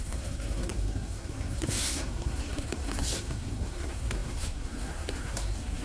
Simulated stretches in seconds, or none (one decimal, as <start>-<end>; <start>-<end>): 0.0-5.8